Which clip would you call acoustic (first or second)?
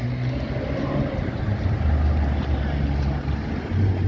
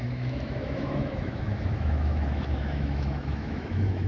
first